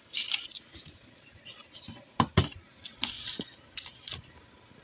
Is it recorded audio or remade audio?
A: recorded